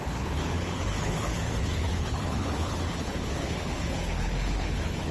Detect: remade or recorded remade